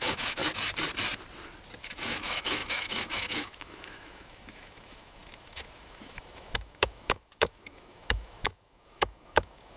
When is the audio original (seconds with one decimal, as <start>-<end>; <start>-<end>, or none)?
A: 0.4-1.8